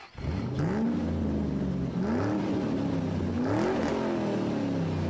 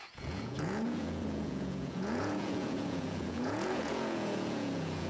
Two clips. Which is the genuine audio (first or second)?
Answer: first